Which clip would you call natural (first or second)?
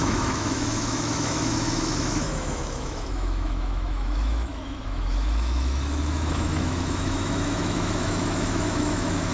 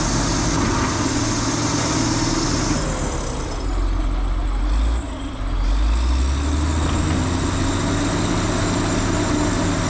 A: second